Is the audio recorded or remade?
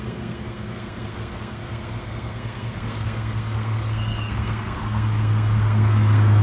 remade